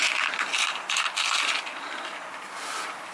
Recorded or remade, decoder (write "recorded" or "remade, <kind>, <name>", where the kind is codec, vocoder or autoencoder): recorded